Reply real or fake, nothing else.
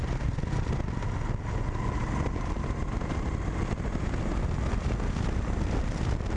real